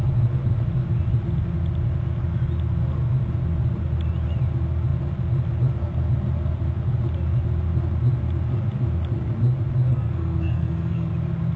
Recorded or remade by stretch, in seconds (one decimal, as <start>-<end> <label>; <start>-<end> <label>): 0.0-9.9 recorded; 9.9-11.1 remade; 11.1-11.6 recorded